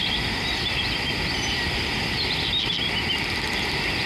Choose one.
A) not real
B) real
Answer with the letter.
B